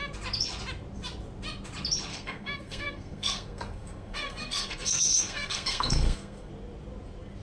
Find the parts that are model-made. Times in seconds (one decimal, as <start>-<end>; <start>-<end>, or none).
2.1-6.5